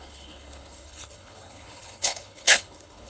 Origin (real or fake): fake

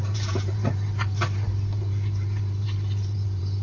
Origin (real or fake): fake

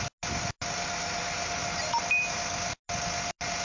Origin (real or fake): real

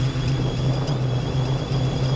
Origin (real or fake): real